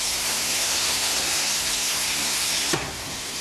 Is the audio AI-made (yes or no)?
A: yes